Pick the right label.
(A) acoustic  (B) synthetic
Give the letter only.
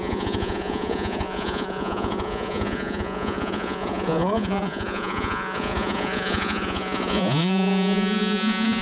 B